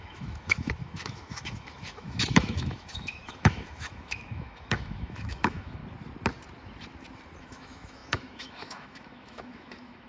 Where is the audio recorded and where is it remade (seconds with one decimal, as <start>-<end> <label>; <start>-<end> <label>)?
0.0-5.8 remade; 5.8-7.4 recorded; 7.4-10.1 remade